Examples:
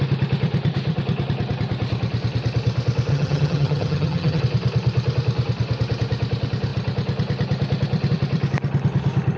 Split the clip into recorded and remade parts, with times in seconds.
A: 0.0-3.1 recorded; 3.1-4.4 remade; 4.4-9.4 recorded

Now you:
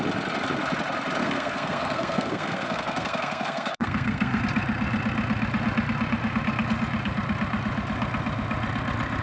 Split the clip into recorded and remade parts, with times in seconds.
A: 0.0-1.2 recorded; 1.2-4.4 remade; 4.4-9.2 recorded

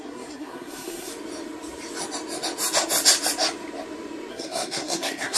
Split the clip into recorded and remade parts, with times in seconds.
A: 0.0-1.1 remade; 1.1-4.3 recorded; 4.3-5.4 remade